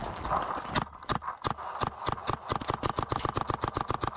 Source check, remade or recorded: recorded